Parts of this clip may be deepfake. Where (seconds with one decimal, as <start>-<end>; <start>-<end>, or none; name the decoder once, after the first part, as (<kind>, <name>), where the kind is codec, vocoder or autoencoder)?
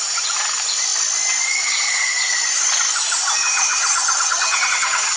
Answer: 3.4-5.2 (vocoder, HiFi-GAN)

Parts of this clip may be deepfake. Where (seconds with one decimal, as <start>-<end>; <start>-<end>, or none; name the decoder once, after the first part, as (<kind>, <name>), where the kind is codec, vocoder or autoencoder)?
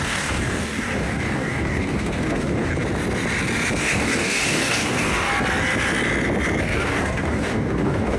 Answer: 0.0-2.7 (codec, DAC); 3.8-5.3; 6.6-8.2